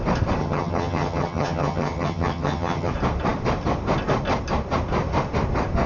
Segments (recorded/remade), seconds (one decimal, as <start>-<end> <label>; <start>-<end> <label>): 0.0-0.4 recorded; 0.4-2.9 remade; 2.9-5.9 recorded